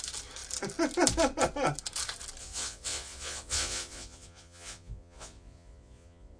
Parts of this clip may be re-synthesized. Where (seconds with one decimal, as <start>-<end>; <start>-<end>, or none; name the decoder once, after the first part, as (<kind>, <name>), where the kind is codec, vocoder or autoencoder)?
2.4-6.4 (vocoder, Vocos)